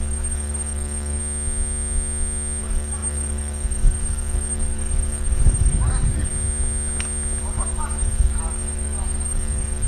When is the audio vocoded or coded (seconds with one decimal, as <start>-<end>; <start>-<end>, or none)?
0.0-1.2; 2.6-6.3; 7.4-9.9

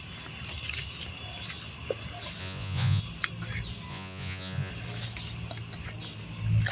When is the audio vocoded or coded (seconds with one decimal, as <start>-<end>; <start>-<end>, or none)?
2.4-3.0; 3.9-4.7

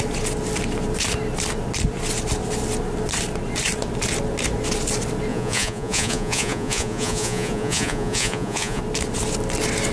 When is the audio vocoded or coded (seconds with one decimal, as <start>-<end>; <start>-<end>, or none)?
5.3-8.8

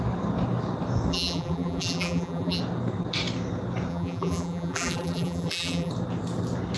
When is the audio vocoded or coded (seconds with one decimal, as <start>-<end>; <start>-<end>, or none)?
1.1-2.6; 3.9-5.9